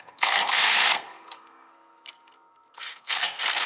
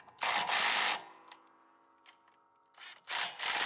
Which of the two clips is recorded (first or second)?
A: second